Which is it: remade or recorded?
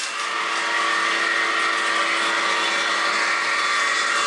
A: recorded